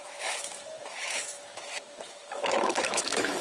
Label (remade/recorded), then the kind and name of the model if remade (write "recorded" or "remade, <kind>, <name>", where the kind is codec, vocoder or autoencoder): remade, autoencoder, DAC-VAE